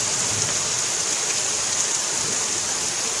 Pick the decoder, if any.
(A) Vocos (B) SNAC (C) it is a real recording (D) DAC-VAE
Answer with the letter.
C